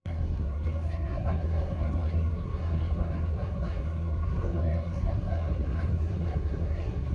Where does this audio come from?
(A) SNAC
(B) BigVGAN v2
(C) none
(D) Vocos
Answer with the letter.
A